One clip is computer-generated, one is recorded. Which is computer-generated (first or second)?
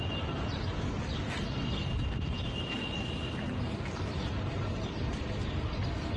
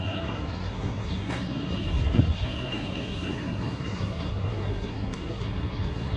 second